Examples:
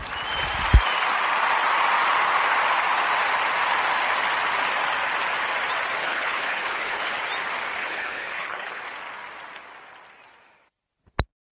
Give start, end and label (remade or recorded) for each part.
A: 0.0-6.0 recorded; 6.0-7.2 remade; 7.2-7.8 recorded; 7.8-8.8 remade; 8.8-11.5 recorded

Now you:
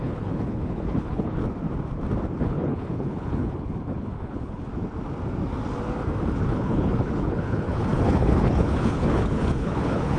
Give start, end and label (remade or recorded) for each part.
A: 0.0-1.4 remade; 1.4-2.4 recorded; 2.4-4.7 remade; 4.7-6.3 recorded; 6.3-10.2 remade